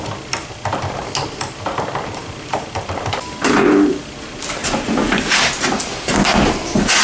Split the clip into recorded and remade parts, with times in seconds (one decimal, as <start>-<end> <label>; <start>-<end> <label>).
0.0-2.2 recorded; 2.2-4.0 remade; 4.0-4.6 recorded; 4.6-5.5 remade; 5.5-7.0 recorded